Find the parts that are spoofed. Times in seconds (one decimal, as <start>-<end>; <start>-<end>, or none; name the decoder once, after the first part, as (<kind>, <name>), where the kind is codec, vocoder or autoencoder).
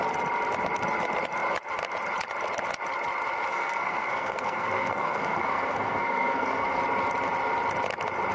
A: 3.5-6.8 (codec, SNAC)